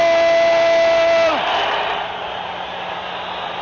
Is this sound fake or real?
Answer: real